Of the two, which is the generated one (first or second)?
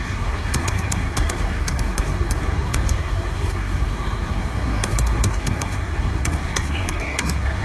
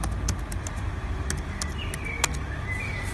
first